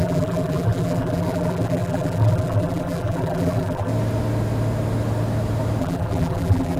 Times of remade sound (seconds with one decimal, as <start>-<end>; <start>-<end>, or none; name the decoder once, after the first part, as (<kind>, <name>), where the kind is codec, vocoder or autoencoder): 0.0-3.9 (vocoder, BigVGAN v2); 5.8-6.8